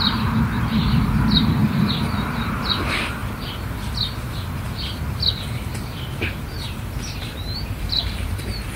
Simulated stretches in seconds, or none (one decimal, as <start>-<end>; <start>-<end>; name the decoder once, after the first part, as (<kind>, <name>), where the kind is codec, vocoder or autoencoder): 0.0-3.2 (vocoder, BigVGAN v2); 5.9-8.8